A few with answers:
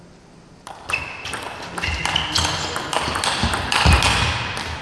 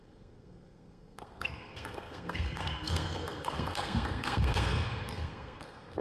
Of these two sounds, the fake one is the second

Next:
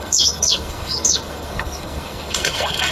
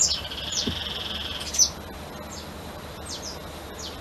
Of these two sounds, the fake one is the first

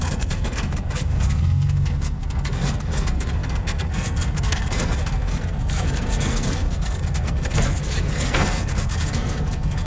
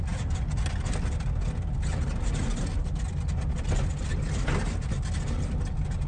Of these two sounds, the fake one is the first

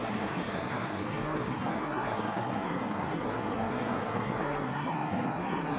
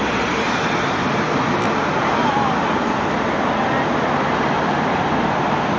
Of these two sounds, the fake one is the first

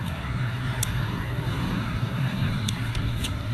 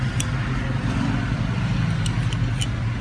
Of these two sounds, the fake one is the first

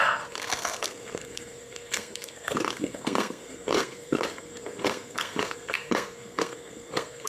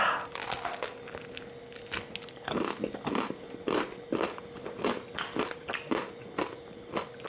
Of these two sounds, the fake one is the first